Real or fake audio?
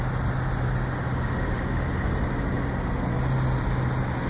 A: real